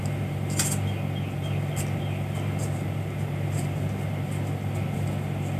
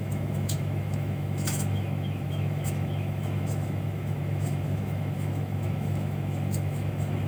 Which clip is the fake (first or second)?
second